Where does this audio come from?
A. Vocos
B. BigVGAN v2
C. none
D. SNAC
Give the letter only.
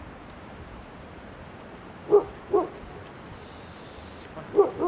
C